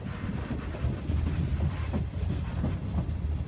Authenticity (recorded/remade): recorded